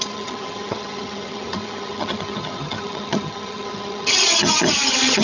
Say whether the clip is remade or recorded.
remade